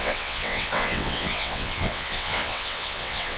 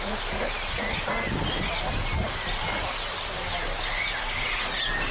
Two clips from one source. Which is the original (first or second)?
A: second